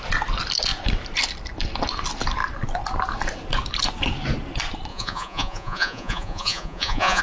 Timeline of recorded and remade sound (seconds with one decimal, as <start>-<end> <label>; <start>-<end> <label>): 0.0-4.9 recorded; 4.9-7.2 remade